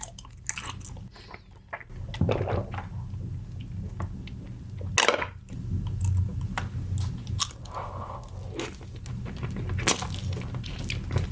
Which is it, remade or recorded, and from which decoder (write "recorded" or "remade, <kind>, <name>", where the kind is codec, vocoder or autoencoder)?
recorded